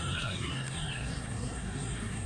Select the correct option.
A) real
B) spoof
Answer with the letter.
B